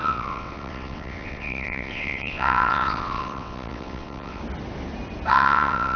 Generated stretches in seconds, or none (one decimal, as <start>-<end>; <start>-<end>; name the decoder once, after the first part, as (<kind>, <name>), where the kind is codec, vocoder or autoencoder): 0.0-4.4 (vocoder, WaveNeXt); 5.3-6.0

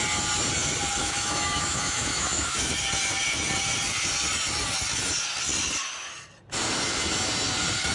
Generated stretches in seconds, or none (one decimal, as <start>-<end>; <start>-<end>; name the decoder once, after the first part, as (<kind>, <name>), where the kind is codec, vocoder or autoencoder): 1.0-2.7 (autoencoder, DAC-VAE)

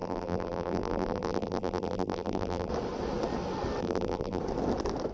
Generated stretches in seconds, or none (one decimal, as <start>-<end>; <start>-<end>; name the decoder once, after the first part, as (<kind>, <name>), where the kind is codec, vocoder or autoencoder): 0.0-2.7 (vocoder, BigVGAN v2); 3.8-4.4

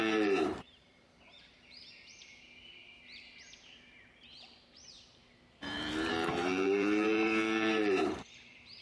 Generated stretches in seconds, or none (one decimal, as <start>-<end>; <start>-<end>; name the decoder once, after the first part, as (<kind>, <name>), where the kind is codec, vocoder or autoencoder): 0.0-8.8 (vocoder, BigVGAN v2)

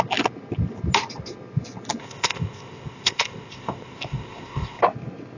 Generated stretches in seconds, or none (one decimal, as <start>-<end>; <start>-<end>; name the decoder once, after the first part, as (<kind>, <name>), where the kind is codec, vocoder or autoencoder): 2.0-4.8 (codec, ZipCodec)

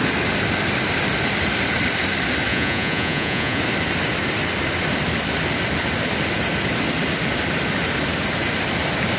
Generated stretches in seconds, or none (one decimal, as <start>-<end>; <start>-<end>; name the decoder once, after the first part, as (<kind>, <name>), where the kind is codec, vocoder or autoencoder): 2.5-3.6 (vocoder, Vocos)